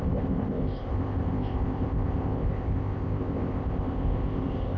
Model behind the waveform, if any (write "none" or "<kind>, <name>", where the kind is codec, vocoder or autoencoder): codec, ZipCodec